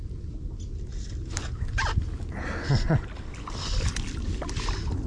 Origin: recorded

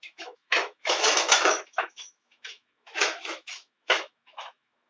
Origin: remade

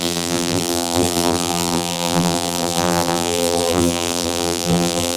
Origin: remade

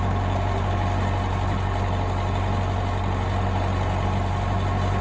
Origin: recorded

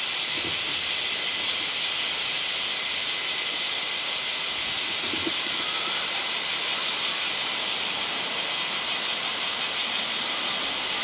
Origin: recorded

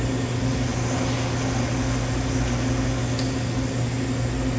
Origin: recorded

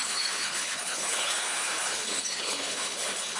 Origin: remade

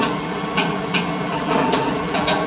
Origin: remade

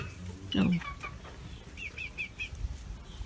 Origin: recorded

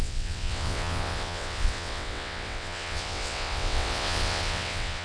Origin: remade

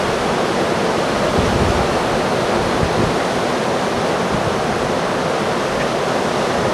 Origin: recorded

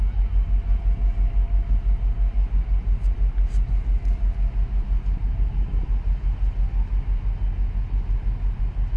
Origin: recorded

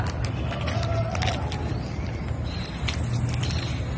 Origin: recorded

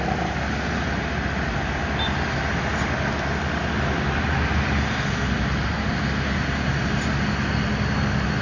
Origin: recorded